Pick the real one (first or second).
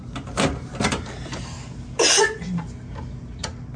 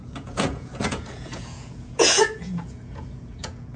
first